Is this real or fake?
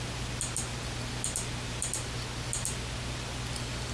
real